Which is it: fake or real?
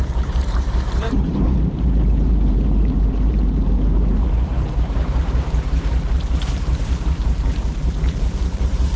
fake